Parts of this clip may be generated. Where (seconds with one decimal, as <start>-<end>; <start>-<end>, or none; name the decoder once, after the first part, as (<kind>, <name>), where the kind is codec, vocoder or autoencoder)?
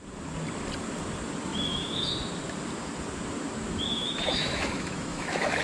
1.5-2.1 (autoencoder, DAC-VAE); 3.9-5.6